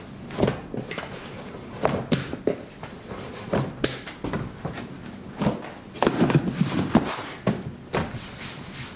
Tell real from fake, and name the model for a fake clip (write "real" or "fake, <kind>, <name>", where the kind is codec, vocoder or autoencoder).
fake, vocoder, BigVGAN v2